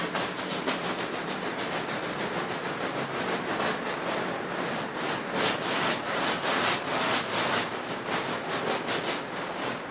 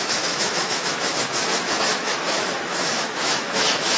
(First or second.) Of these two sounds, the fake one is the second